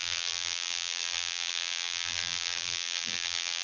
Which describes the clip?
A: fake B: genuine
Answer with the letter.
A